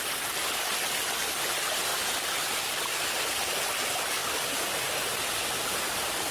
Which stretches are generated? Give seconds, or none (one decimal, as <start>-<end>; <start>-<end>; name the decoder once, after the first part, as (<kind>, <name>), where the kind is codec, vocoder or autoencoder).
none